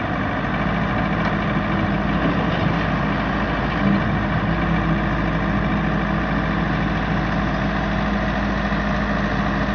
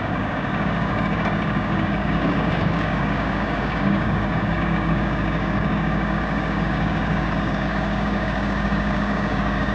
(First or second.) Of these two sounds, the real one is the first